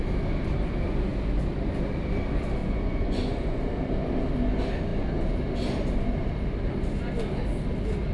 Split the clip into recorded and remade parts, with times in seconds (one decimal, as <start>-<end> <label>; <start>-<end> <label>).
0.0-2.6 recorded; 2.6-3.6 remade; 3.6-8.1 recorded